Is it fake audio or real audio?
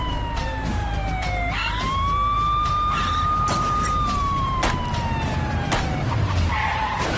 fake